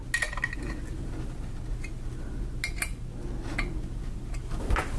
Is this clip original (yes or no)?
yes